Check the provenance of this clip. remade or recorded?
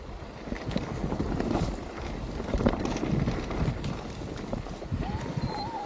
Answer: recorded